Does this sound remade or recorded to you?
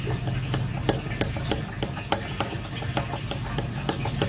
recorded